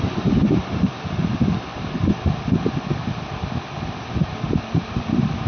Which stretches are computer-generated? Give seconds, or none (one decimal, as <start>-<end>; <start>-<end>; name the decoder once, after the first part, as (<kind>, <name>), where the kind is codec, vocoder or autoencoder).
none

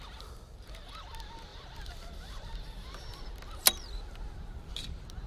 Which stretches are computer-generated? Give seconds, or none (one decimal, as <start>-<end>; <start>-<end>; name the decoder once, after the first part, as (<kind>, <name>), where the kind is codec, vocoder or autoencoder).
none

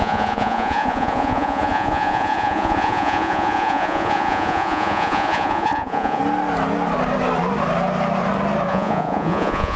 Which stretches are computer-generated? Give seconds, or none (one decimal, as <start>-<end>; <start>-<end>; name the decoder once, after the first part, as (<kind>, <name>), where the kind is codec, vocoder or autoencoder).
0.0-6.2 (vocoder, Vocos); 8.7-9.8

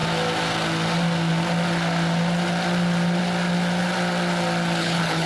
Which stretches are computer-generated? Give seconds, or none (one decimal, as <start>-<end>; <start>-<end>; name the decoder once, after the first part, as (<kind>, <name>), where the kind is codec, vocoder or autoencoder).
4.8-5.3 (codec, HILCodec)